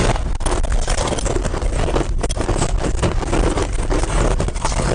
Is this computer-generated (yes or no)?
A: yes